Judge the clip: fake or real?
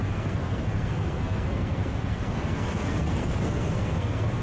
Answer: fake